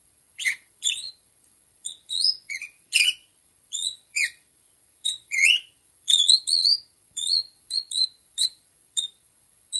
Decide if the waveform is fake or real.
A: fake